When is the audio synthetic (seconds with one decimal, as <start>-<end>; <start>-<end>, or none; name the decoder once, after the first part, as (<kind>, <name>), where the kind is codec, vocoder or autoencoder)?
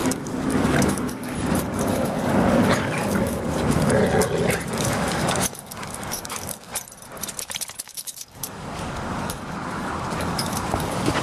0.0-4.0 (codec, DAC); 4.7-6.7; 7.8-11.2